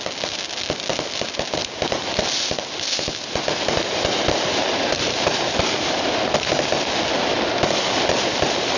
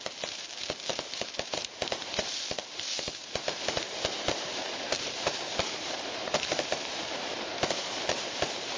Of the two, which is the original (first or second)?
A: first